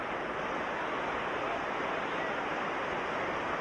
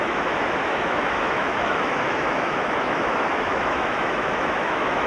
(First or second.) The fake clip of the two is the second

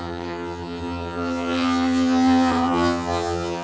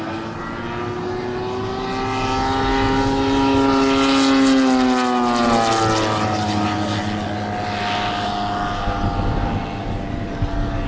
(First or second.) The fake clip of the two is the first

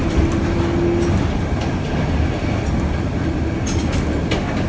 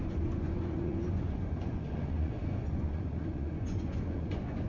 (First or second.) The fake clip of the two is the second